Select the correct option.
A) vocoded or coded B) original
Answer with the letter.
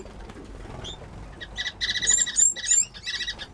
B